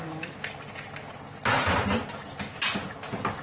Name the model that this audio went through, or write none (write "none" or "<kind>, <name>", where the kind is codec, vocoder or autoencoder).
none